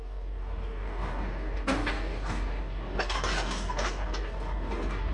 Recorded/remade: remade